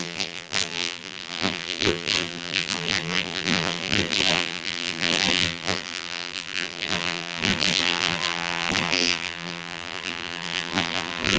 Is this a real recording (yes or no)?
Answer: no